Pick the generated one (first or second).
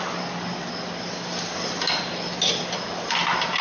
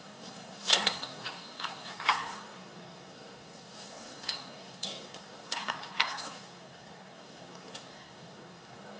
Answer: second